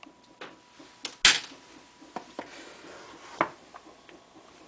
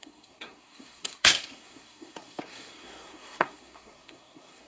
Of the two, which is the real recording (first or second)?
first